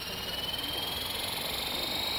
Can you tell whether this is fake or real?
real